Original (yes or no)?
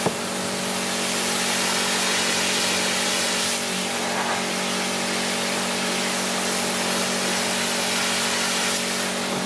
yes